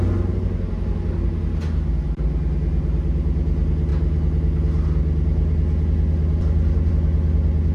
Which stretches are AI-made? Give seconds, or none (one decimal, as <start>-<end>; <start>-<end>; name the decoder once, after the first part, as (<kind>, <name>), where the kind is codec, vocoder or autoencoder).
none